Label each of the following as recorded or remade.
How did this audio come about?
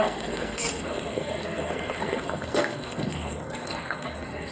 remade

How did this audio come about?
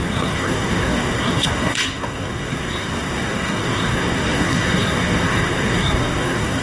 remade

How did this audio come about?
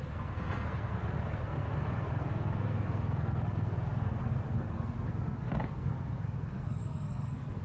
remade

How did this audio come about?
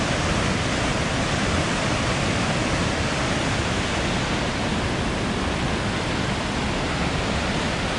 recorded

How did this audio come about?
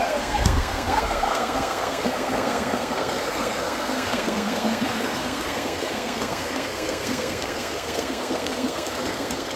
remade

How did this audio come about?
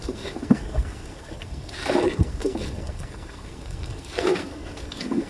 remade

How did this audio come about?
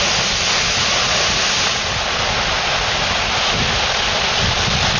recorded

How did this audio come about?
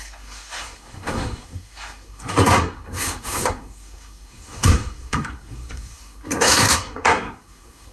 remade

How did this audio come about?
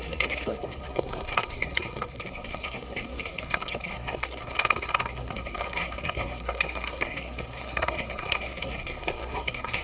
remade